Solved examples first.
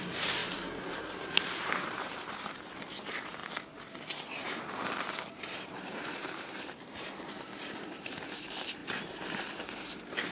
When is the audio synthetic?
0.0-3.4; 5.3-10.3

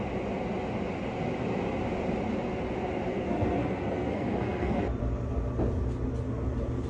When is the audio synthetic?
3.1-4.8

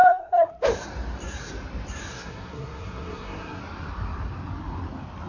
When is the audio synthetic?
0.0-0.5; 2.1-3.6

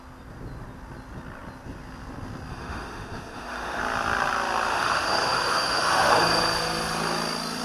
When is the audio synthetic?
2.5-3.8; 4.7-6.1

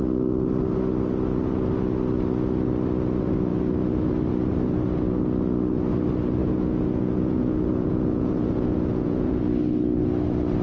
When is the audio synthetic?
6.4-9.4